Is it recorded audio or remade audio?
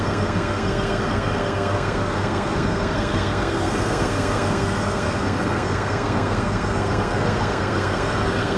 remade